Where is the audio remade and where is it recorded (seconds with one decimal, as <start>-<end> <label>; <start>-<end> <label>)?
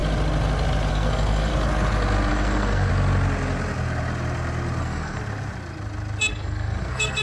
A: 0.0-0.9 recorded; 0.9-1.5 remade; 1.5-2.3 recorded; 2.3-2.9 remade; 2.9-4.8 recorded; 4.8-5.2 remade; 5.2-6.3 recorded; 6.3-7.2 remade